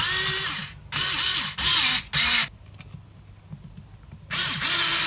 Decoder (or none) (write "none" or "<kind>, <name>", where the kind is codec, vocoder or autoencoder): none